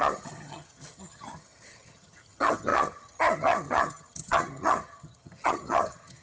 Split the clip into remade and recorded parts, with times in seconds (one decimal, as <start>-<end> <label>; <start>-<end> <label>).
0.0-6.2 remade

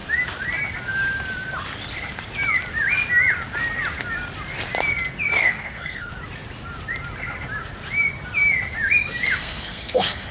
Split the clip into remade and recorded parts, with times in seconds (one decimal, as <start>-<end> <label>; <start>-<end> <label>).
0.0-5.4 recorded; 5.4-6.1 remade; 6.1-9.4 recorded; 9.4-10.3 remade

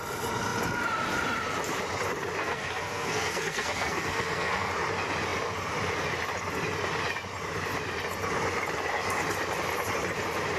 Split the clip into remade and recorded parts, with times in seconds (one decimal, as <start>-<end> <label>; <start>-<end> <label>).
0.0-2.4 recorded; 2.4-4.7 remade; 4.7-10.6 recorded

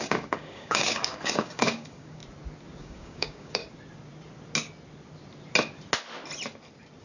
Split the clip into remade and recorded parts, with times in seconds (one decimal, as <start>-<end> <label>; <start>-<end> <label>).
0.0-2.2 remade; 2.2-2.8 recorded; 2.8-3.6 remade; 3.6-7.0 recorded

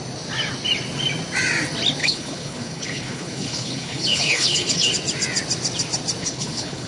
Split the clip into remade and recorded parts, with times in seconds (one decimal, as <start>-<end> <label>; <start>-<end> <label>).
0.0-2.0 recorded; 2.0-4.9 remade; 4.9-6.2 recorded; 6.2-6.9 remade

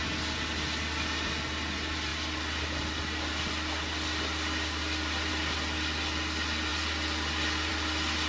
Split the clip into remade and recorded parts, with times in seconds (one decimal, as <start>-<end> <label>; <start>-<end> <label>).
0.0-8.3 recorded